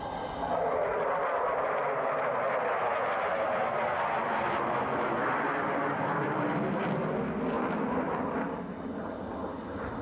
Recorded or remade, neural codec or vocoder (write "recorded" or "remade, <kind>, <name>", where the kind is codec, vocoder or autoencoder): recorded